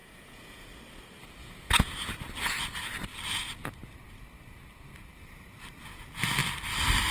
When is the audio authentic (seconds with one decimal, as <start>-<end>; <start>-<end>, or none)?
0.7-1.4; 2.1-7.1